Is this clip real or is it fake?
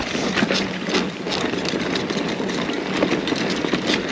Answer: real